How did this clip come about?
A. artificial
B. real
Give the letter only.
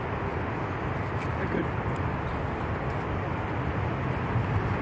B